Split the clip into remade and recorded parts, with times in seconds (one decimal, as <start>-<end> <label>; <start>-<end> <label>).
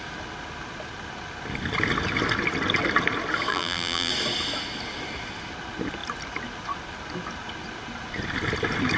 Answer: 0.0-3.5 recorded; 3.5-4.1 remade; 4.1-9.0 recorded